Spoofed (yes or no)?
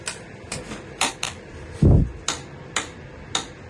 no